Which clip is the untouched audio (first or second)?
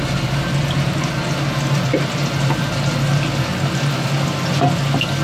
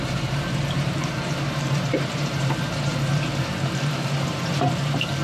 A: first